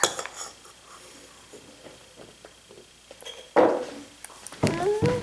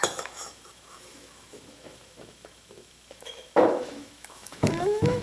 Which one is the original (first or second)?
first